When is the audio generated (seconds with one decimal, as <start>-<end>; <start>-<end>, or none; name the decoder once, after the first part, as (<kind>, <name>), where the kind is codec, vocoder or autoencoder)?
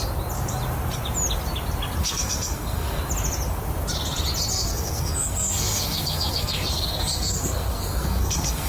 2.0-3.0 (codec, SNAC); 4.5-8.7